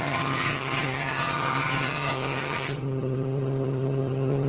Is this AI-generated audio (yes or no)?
yes